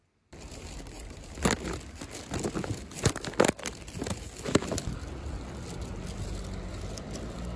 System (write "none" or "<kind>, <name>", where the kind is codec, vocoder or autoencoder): none